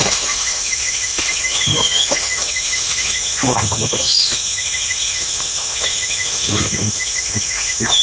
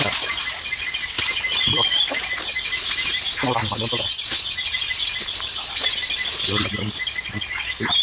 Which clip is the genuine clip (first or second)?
second